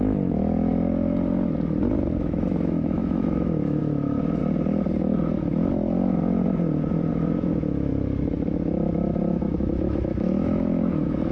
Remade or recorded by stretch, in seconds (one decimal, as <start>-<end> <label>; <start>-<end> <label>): 0.0-0.7 remade; 0.7-2.2 recorded; 2.2-4.4 remade; 4.4-7.1 recorded; 7.1-7.9 remade; 7.9-9.3 recorded; 9.3-11.3 remade